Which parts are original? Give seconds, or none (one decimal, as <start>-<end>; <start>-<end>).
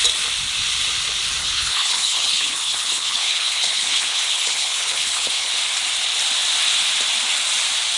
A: 0.0-1.4; 5.5-8.0